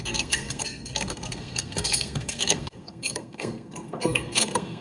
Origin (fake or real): fake